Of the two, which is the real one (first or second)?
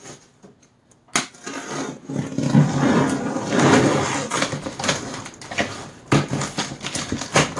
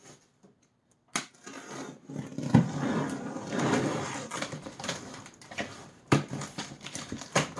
first